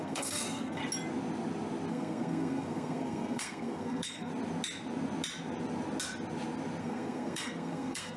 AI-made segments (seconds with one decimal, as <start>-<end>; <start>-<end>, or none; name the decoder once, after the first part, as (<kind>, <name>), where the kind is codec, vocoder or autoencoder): 0.0-0.8 (codec, SNAC); 1.9-4.3; 6.8-8.2